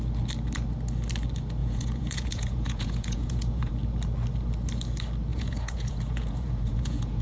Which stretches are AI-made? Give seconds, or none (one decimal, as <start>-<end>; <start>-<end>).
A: 1.6-3.7; 5.3-7.2